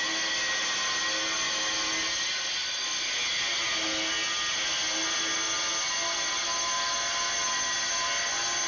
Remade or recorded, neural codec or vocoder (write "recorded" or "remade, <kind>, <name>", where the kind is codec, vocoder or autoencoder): recorded